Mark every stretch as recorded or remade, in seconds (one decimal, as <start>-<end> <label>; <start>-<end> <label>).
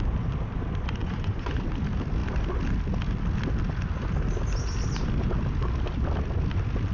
0.0-1.0 recorded; 1.0-1.6 remade; 1.6-6.9 recorded